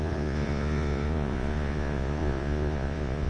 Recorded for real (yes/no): no